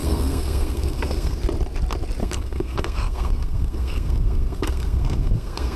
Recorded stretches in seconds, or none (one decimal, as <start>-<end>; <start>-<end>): 1.4-2.2